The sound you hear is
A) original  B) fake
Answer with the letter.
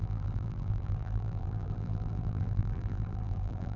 B